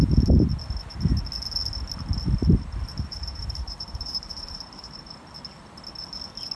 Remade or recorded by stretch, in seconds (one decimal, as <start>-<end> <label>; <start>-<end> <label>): 0.0-2.9 recorded; 2.9-5.1 remade; 5.1-6.6 recorded

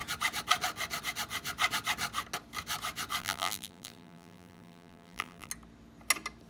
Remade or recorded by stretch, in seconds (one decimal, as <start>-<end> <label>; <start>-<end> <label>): 0.0-3.2 recorded; 3.2-5.5 remade; 5.5-6.5 recorded

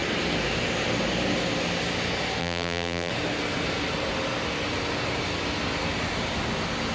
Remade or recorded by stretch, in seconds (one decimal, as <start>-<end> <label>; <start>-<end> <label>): 0.0-2.4 recorded; 2.4-3.1 remade; 3.1-6.9 recorded

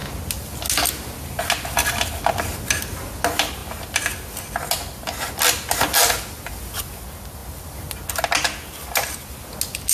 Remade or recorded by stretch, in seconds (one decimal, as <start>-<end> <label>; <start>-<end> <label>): 0.0-9.9 recorded

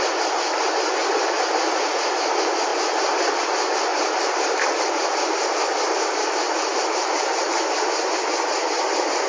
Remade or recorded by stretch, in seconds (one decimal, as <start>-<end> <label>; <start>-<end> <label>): 0.0-1.0 recorded; 1.0-2.3 remade; 2.3-2.7 recorded; 2.7-3.4 remade; 3.4-3.9 recorded; 3.9-4.7 remade; 4.7-9.3 recorded

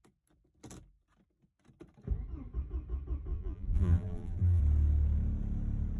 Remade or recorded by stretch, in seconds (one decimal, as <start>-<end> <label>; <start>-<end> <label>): 0.0-3.3 recorded; 3.3-4.6 remade; 4.6-6.0 recorded

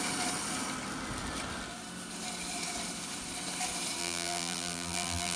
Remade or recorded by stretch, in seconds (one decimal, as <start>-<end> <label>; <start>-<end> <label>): 0.0-4.0 recorded; 4.0-5.4 remade

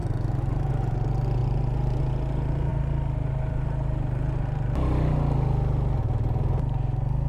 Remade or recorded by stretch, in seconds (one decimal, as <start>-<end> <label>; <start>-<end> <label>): 0.0-7.3 recorded